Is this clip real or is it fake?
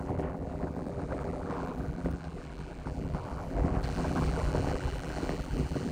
fake